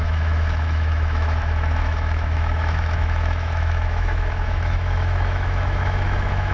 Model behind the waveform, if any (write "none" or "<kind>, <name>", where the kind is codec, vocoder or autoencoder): autoencoder, DAC-VAE